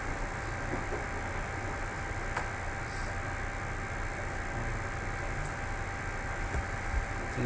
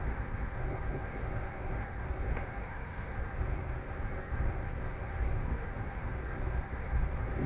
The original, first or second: first